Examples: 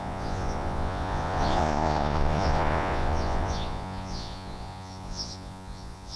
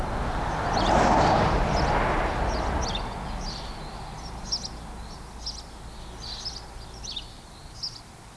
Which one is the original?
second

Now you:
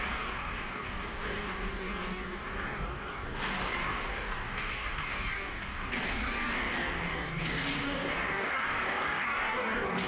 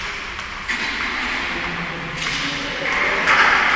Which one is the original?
second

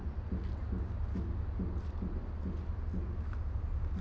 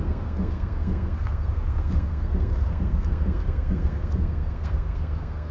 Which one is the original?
first